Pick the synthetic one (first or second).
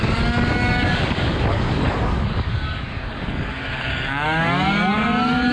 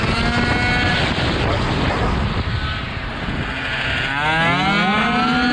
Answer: first